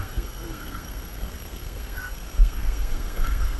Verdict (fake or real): fake